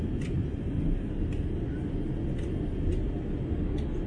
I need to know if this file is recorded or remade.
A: recorded